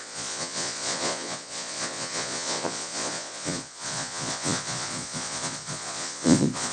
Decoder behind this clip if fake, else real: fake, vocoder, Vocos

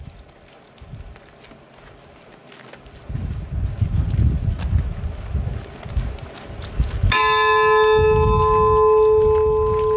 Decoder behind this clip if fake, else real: real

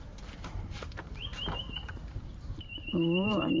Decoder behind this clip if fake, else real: fake, vocoder, BigVGAN v2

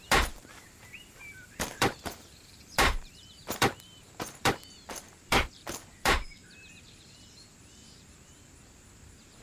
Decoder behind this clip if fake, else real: fake, vocoder, BigVGAN v2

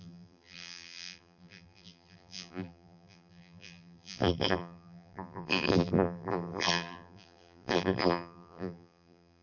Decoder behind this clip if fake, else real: fake, vocoder, BigVGAN v2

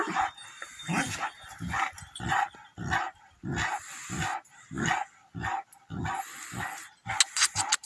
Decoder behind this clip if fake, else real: real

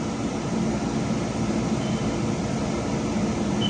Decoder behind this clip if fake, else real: real